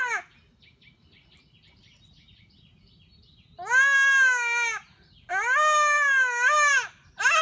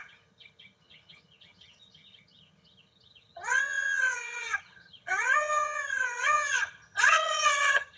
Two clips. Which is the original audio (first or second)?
first